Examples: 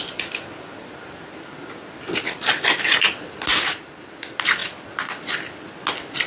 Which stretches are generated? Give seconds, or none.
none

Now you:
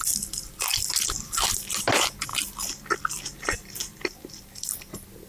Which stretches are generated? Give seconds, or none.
none

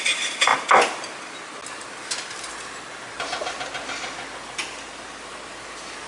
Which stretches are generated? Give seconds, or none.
none

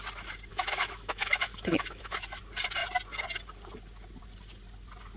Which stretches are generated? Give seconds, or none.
0.5-2.4 (autoencoder, DAC-VAE)

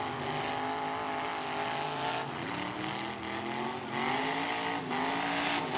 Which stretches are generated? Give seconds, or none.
none